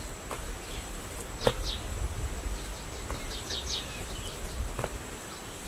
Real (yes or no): yes